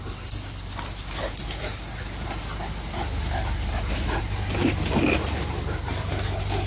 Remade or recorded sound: recorded